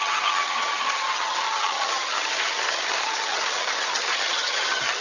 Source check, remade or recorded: remade